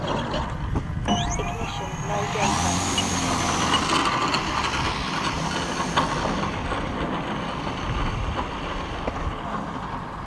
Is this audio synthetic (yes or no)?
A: no